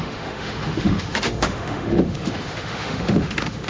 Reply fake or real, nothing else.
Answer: fake